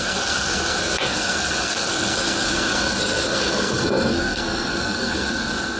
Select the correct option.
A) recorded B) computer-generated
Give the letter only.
B